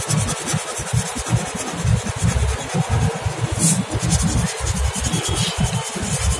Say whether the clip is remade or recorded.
recorded